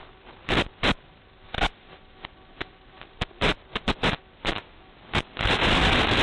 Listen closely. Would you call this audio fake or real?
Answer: real